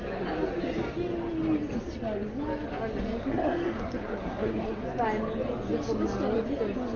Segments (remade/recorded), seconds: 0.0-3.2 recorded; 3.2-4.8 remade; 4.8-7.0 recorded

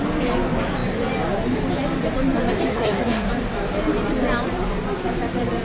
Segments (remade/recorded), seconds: 0.0-2.7 recorded; 2.7-3.3 remade; 3.3-5.6 recorded

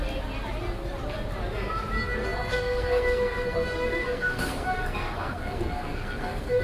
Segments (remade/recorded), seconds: 0.0-2.2 recorded; 2.2-6.6 remade

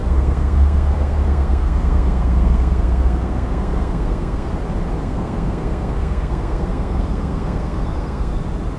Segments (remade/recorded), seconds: 0.0-4.5 remade; 4.5-5.0 recorded; 5.0-8.4 remade; 8.4-8.8 recorded

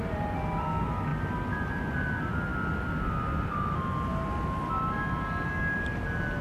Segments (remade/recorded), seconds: 0.0-6.4 recorded

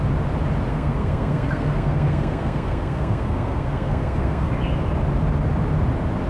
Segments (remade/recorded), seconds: 0.0-0.7 recorded; 0.7-4.5 remade; 4.5-6.3 recorded